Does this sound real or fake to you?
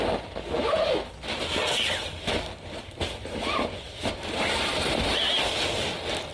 real